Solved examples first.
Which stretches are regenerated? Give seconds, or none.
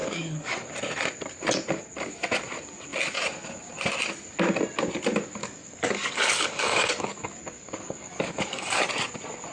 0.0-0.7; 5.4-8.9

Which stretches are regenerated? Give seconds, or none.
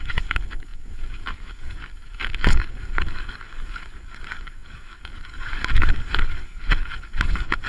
0.0-7.7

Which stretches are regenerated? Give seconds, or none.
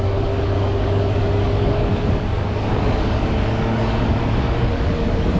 0.0-5.4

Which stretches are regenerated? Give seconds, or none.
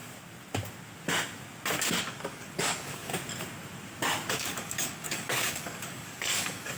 2.0-3.1; 4.3-6.8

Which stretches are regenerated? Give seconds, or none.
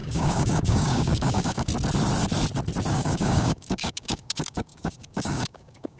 0.0-1.7; 2.9-6.0